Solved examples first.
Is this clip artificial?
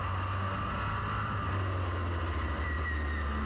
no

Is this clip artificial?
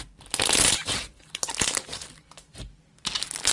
no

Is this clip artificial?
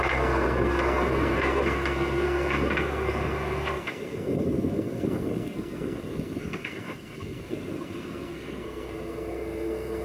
yes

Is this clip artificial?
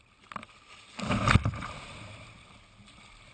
no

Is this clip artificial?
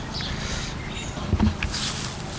no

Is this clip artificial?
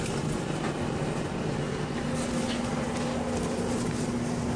no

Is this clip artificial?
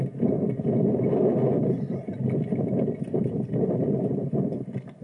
no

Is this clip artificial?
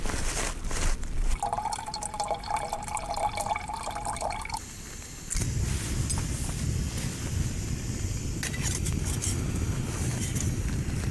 no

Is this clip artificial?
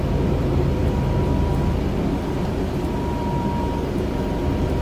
no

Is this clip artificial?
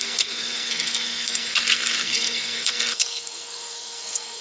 yes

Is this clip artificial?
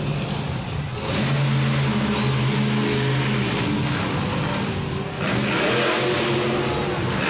no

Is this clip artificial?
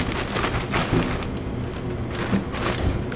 no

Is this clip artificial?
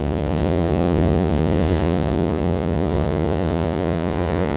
yes